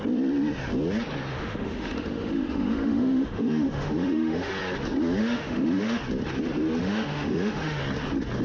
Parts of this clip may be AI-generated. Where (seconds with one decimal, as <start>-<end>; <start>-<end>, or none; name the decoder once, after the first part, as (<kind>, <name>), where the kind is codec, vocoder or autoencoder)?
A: 1.3-4.5 (autoencoder, DAC-VAE); 5.2-6.0; 6.8-7.8